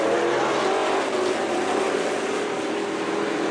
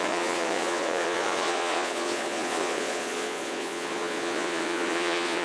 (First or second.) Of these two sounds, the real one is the first